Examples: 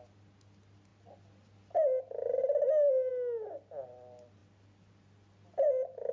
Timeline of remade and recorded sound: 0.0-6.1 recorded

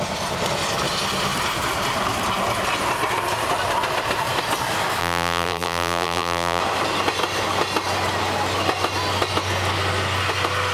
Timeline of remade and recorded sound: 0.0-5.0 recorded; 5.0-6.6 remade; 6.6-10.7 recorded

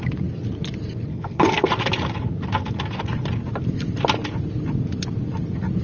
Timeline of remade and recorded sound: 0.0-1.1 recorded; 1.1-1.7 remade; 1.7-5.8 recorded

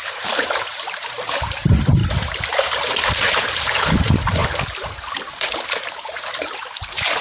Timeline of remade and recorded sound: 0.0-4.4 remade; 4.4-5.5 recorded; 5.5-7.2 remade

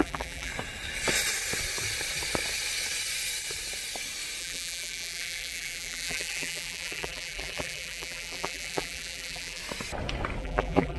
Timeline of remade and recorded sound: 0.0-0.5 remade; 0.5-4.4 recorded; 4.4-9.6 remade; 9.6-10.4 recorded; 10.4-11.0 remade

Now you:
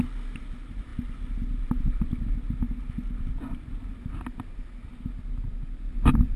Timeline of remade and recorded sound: 0.0-6.4 recorded

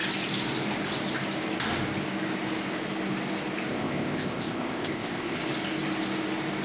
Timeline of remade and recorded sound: 0.0-3.7 recorded; 3.7-5.4 remade; 5.4-6.6 recorded